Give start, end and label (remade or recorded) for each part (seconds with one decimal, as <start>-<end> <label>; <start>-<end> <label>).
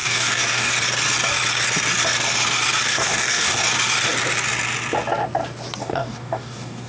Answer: 0.0-0.7 remade; 0.7-2.9 recorded; 2.9-3.6 remade; 3.6-5.8 recorded; 5.8-6.9 remade